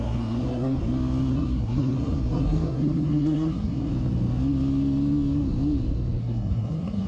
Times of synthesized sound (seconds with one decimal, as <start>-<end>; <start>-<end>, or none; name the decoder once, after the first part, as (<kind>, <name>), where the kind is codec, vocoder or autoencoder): 0.0-0.8 (codec, SNAC); 1.3-3.9; 6.2-7.1